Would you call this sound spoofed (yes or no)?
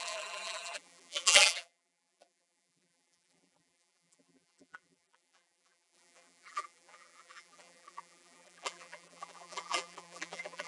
yes